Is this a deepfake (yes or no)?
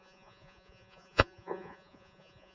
yes